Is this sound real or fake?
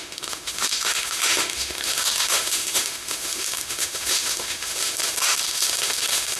fake